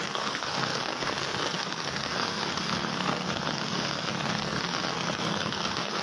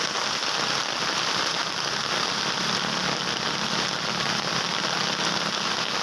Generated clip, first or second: first